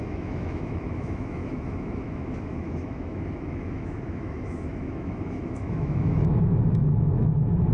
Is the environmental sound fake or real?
fake